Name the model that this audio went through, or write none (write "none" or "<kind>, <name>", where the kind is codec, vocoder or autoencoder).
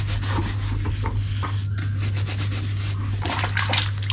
none